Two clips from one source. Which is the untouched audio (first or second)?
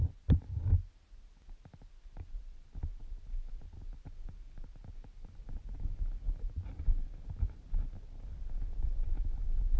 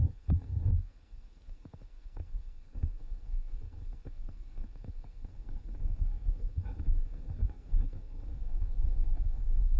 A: first